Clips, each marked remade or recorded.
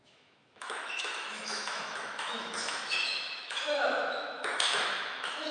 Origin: remade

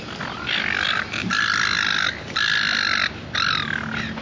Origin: recorded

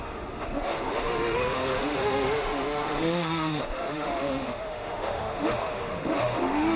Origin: remade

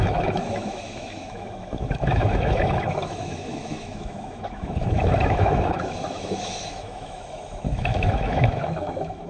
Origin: remade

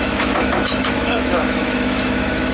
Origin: remade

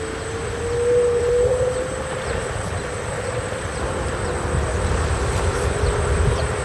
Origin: recorded